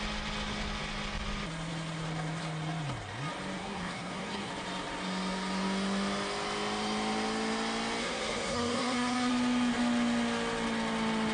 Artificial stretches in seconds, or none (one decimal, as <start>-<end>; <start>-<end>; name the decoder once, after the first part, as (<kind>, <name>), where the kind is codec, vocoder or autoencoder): 3.6-4.5 (codec, SNAC); 8.0-9.3